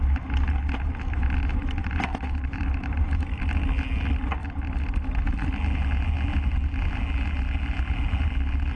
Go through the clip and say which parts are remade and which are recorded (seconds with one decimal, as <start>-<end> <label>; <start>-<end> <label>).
0.0-1.8 recorded; 1.8-3.4 remade; 3.4-8.8 recorded